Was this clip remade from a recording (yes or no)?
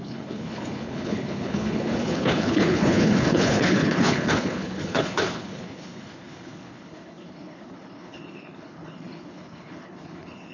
yes